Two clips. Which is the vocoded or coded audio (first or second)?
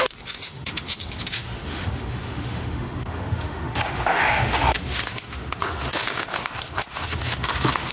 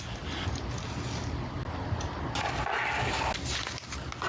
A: first